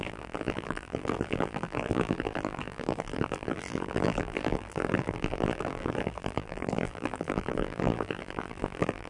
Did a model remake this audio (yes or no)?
yes